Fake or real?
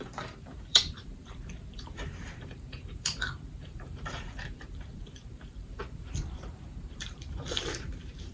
fake